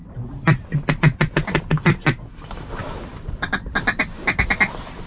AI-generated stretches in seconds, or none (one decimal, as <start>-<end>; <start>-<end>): none